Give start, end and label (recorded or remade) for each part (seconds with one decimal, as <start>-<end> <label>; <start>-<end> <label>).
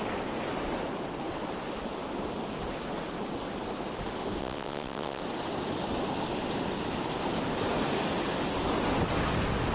0.0-4.4 recorded; 4.4-5.2 remade; 5.2-9.7 recorded